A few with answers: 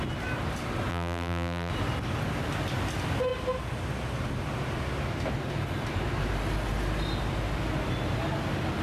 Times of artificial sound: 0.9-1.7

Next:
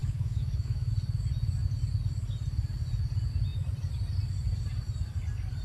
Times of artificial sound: 0.0-0.9

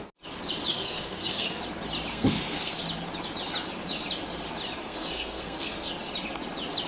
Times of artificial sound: 0.7-1.6; 2.1-2.8; 4.8-5.9